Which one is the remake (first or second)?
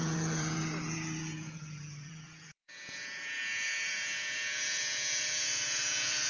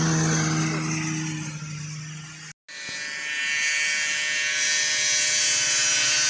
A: first